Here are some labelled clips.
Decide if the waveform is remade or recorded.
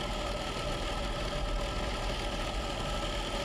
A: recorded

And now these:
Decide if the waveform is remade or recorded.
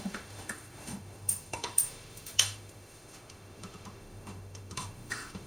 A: remade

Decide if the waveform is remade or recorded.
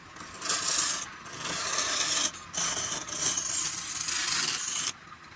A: recorded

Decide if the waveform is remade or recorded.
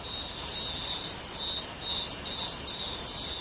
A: recorded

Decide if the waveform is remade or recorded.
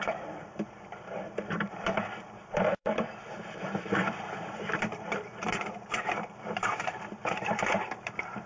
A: remade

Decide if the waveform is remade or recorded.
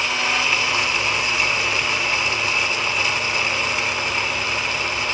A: recorded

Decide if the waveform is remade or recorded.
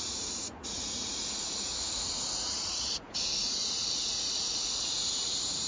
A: remade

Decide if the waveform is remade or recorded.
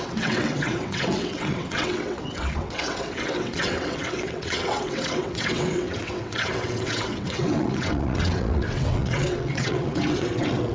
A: remade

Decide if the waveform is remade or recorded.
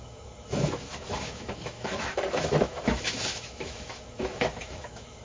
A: remade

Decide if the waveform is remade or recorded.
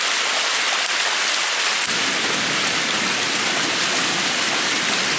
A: recorded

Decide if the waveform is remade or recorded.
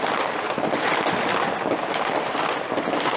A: recorded